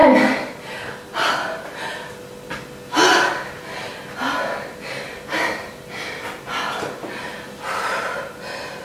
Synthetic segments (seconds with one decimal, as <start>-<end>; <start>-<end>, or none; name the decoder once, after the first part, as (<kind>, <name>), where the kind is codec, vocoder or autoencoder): none